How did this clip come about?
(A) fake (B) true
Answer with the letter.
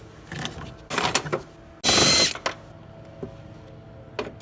B